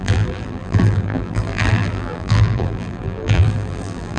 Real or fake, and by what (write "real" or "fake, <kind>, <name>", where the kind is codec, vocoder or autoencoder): fake, vocoder, BigVGAN v2